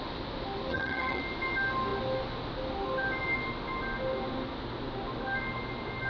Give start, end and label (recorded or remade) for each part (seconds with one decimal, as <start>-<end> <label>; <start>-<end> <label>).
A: 0.0-0.7 recorded; 0.7-1.2 remade; 1.2-6.1 recorded